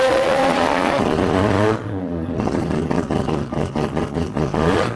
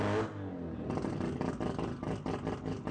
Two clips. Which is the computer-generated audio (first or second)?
first